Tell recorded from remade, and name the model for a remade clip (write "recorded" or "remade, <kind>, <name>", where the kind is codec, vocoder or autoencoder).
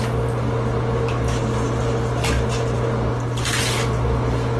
recorded